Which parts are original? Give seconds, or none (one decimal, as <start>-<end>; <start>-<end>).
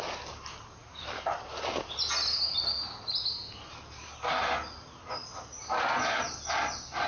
0.0-7.1